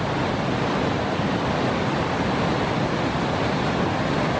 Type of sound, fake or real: real